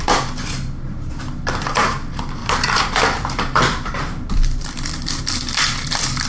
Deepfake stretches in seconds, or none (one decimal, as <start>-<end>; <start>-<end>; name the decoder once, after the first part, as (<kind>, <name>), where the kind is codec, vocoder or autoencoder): 2.4-5.2 (vocoder, BigVGAN v2)